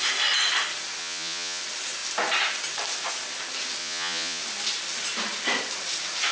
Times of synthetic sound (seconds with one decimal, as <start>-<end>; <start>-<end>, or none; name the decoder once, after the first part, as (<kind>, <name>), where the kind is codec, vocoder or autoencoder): 1.0-1.6 (vocoder, Vocos); 3.8-4.4